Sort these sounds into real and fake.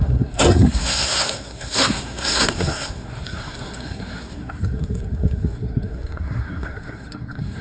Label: fake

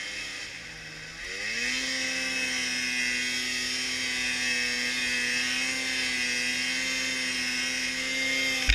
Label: real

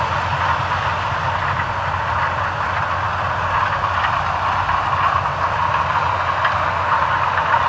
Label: real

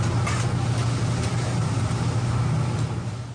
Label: real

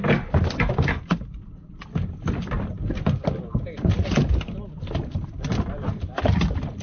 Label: real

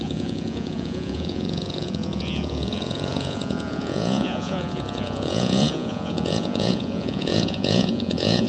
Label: fake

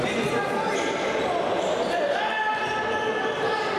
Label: real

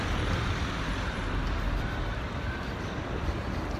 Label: fake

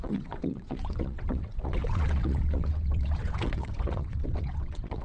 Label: fake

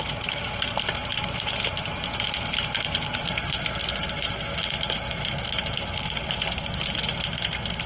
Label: real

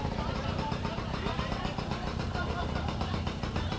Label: fake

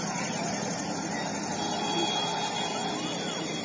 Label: real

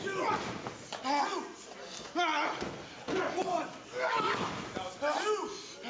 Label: real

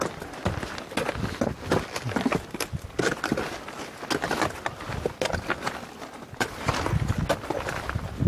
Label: real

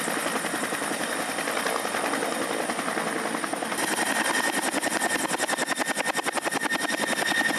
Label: real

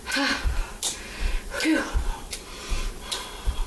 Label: real